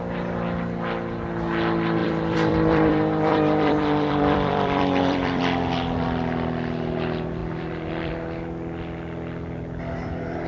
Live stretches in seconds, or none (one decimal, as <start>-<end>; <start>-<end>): 0.0-2.0; 5.4-7.4; 8.1-10.5